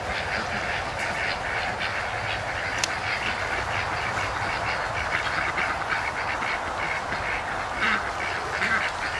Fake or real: real